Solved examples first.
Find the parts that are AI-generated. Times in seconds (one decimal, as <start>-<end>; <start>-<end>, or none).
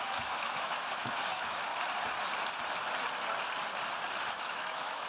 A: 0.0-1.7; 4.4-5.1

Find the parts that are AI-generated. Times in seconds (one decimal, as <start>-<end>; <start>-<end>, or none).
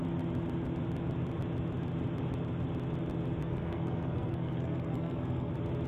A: 3.4-5.5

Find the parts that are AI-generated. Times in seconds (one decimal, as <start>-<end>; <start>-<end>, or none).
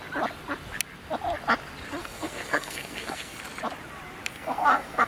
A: 2.0-3.4; 4.3-5.1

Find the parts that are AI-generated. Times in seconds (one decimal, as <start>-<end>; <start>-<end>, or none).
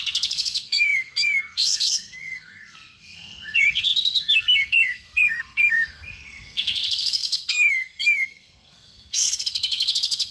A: 0.0-10.3